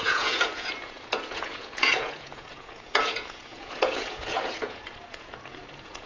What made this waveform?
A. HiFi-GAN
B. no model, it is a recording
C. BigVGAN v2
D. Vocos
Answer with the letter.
D